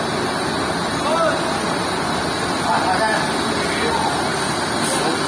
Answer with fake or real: real